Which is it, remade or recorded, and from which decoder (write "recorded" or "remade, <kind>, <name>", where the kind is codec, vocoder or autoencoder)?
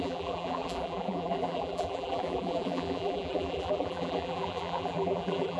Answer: remade, vocoder, BigVGAN v2